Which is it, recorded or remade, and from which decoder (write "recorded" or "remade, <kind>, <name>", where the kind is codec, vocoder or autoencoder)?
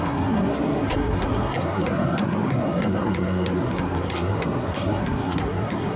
remade, codec, SNAC